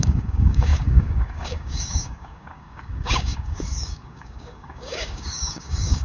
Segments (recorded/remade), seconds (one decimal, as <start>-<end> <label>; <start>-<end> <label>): 0.0-6.0 remade